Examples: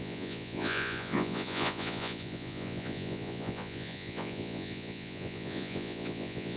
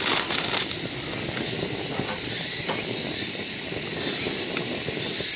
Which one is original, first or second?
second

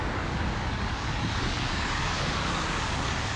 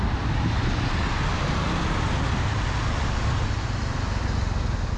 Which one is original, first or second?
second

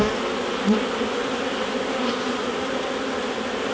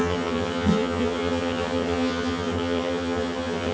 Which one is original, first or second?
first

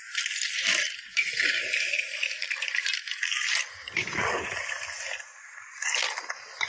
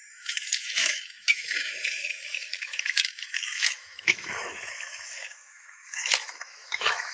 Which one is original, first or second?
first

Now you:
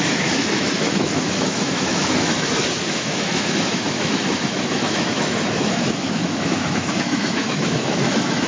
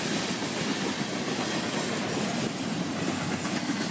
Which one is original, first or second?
second